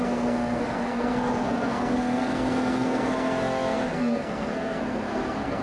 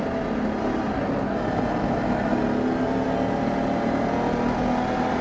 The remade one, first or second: first